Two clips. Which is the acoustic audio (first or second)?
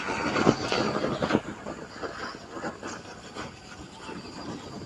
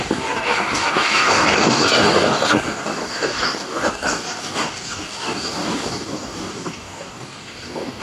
first